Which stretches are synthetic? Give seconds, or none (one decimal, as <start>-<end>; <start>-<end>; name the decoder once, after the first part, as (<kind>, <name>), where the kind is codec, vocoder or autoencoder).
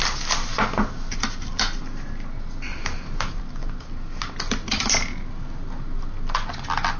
2.7-3.4 (vocoder, BigVGAN v2)